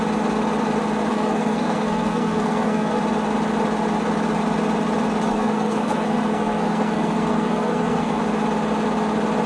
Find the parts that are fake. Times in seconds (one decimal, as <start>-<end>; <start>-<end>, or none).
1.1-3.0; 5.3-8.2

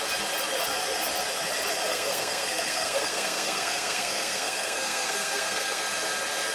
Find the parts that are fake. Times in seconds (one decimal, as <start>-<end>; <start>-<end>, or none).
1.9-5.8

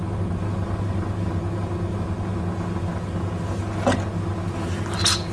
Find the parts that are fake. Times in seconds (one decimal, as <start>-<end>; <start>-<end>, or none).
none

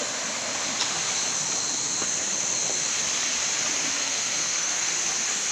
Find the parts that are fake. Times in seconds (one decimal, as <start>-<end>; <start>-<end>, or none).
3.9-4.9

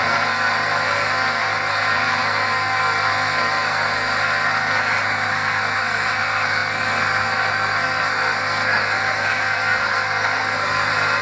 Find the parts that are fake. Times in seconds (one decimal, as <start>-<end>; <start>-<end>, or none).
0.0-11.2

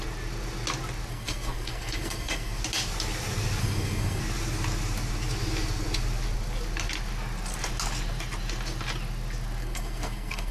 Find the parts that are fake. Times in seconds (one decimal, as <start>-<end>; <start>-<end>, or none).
1.1-2.6; 3.6-4.2; 9.6-10.5